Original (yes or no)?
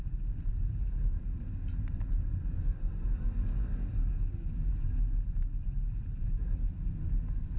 no